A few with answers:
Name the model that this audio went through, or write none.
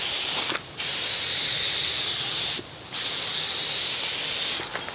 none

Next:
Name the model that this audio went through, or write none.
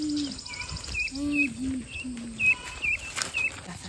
none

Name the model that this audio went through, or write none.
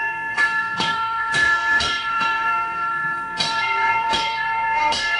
codec, SNAC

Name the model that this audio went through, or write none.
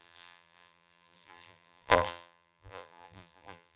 vocoder, BigVGAN v2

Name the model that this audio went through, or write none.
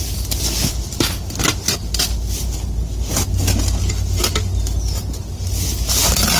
none